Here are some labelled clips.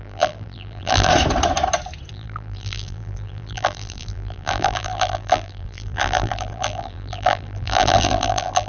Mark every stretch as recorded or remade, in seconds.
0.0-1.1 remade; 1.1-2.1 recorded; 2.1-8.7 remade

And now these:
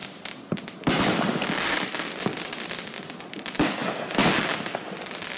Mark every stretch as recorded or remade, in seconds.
0.0-3.8 remade; 3.8-4.4 recorded; 4.4-5.4 remade

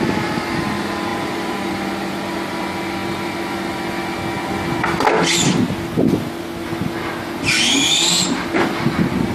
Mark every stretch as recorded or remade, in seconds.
0.0-1.1 recorded; 1.1-2.6 remade; 2.6-9.3 recorded

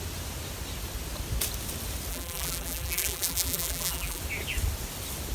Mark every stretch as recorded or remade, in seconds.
0.0-2.1 recorded; 2.1-4.2 remade; 4.2-5.3 recorded

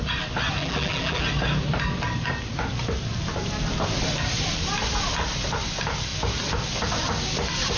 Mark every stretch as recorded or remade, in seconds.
0.0-0.6 recorded; 0.6-1.2 remade; 1.2-7.8 recorded

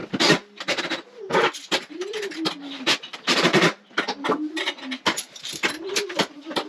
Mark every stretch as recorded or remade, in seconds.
0.0-6.7 recorded

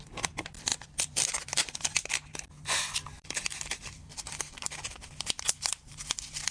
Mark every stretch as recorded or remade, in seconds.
0.0-6.5 remade

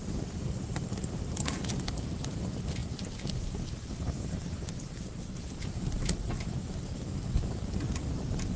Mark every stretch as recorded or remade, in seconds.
0.0-8.6 remade